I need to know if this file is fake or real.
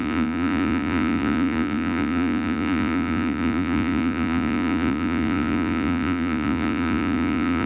fake